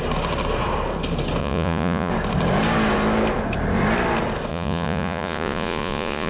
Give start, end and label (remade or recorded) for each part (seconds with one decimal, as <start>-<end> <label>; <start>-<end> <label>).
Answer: 0.0-1.4 recorded; 1.4-2.1 remade; 2.1-4.5 recorded; 4.5-6.3 remade